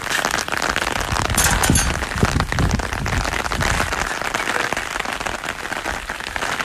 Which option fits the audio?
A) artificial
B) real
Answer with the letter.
B